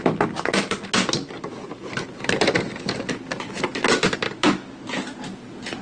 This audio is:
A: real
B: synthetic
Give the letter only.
A